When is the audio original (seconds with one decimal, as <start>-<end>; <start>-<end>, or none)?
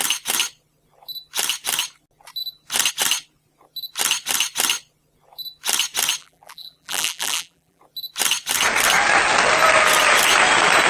0.0-6.2; 7.8-10.9